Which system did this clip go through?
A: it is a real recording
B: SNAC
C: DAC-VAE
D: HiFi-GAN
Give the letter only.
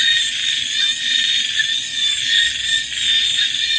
A